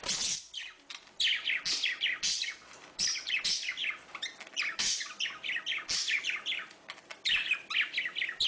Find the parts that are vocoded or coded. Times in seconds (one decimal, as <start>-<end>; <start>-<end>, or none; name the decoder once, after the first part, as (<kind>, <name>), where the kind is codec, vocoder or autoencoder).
0.0-8.5 (vocoder, BigVGAN v2)